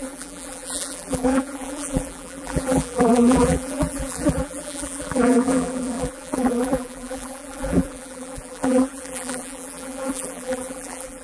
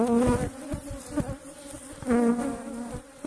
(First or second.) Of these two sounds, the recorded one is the second